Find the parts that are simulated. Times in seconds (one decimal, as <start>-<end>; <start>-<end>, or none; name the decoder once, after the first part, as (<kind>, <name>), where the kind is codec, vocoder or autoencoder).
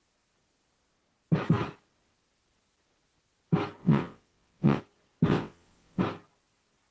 3.8-4.8 (vocoder, WaveNeXt); 5.3-6.0